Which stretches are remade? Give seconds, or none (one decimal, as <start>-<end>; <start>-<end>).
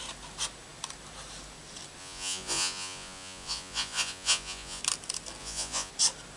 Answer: 2.0-4.8; 5.4-5.9